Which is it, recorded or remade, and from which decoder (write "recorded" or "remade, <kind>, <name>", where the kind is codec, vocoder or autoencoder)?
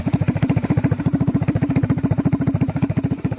remade, vocoder, BigVGAN v2